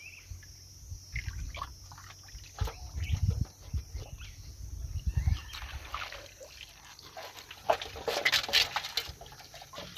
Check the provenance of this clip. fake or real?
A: real